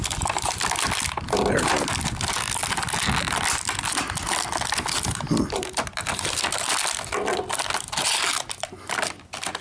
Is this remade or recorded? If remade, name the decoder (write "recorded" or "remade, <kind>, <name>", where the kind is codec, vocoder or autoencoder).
recorded